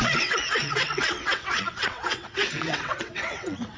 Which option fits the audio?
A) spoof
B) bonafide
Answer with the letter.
A